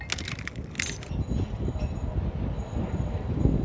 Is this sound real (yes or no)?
yes